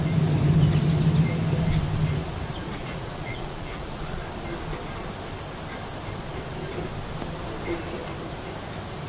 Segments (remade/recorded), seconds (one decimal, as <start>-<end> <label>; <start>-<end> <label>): 0.0-2.8 recorded; 2.8-4.2 remade; 4.2-9.1 recorded